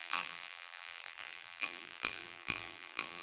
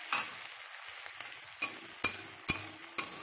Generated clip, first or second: first